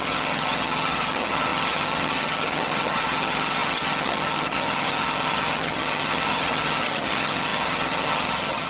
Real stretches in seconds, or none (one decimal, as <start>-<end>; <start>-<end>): none